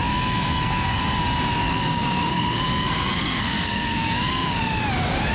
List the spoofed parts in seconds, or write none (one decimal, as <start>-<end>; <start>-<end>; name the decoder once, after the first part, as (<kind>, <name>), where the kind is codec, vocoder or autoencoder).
0.0-1.0 (codec, SNAC); 1.6-4.8